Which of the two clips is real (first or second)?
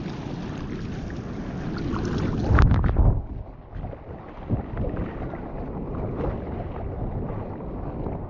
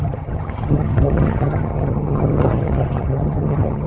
first